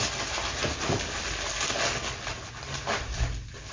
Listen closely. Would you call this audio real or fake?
real